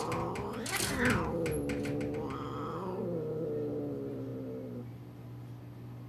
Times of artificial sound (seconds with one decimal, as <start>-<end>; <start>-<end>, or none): none